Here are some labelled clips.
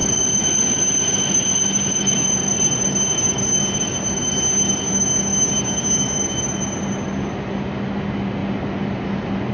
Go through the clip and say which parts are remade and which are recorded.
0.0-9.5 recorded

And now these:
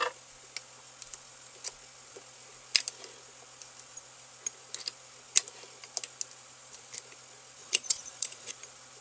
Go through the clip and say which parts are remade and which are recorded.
0.0-7.6 recorded; 7.6-8.5 remade; 8.5-9.0 recorded

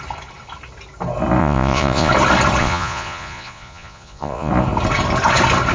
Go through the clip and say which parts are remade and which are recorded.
0.0-1.4 recorded; 1.4-2.1 remade; 2.1-2.6 recorded; 2.6-4.5 remade; 4.5-5.7 recorded

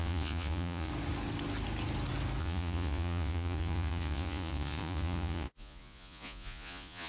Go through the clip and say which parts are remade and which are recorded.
0.0-0.9 remade; 0.9-2.4 recorded; 2.4-7.1 remade

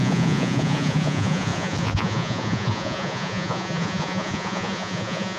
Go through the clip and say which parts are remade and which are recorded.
0.0-5.4 remade

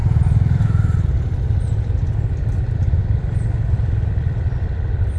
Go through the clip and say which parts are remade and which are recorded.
0.0-5.2 recorded

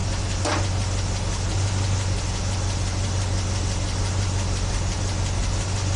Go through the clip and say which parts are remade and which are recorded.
0.0-6.0 recorded